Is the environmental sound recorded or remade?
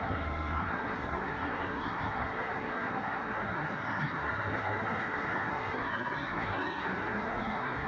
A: remade